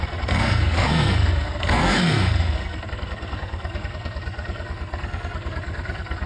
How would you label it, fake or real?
fake